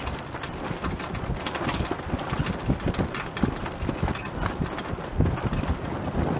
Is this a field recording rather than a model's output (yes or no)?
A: yes